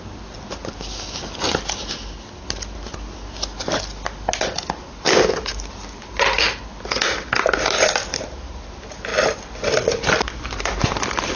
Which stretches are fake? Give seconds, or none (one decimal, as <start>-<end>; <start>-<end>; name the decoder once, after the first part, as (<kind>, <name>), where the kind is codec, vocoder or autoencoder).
none